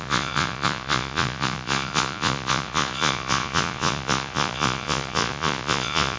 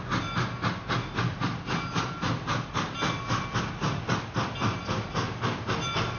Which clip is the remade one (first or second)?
first